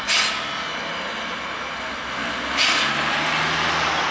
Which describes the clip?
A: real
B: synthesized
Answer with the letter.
A